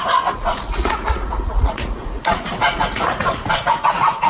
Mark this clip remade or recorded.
remade